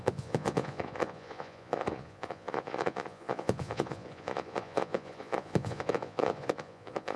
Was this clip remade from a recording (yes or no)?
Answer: yes